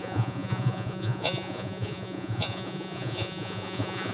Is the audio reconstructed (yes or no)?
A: yes